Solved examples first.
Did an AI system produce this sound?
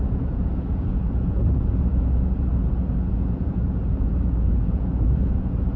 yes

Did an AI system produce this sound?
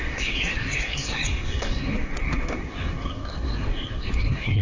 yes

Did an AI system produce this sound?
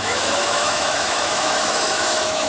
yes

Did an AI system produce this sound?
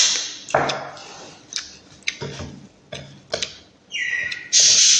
no